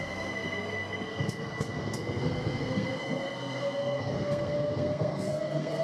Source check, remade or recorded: remade